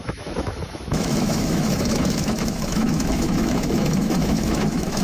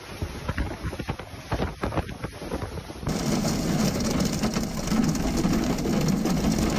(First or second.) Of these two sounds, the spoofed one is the first